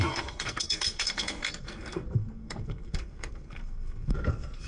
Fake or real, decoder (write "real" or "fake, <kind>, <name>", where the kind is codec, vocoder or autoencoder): fake, codec, SNAC